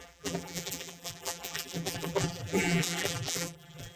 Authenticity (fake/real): fake